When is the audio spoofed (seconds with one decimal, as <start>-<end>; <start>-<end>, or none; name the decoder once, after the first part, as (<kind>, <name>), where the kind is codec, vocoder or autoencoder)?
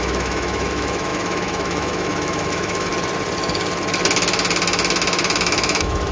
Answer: 0.0-2.9 (autoencoder, DAC-VAE); 5.4-6.1